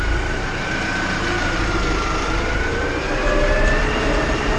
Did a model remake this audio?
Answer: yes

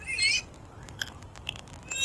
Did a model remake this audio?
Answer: no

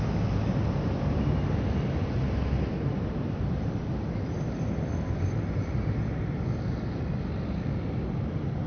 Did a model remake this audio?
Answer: yes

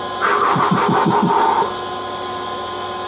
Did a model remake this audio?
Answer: no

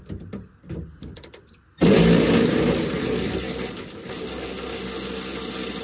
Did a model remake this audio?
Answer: no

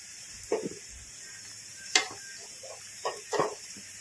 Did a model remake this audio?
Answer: yes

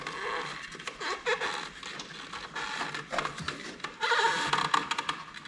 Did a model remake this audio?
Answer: no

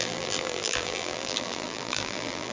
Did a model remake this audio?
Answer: yes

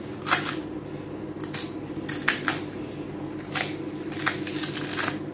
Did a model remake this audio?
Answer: no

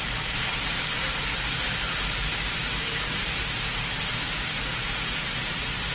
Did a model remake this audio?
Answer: yes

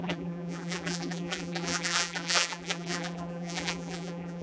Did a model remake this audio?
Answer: yes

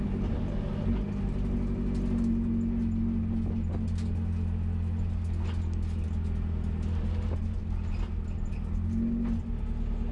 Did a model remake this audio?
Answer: no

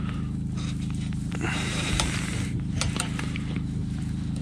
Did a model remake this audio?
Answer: yes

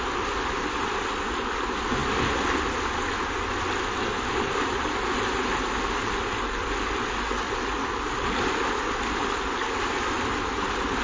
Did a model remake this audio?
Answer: no